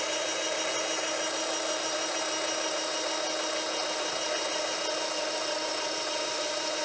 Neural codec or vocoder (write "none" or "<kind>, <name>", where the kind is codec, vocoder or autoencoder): none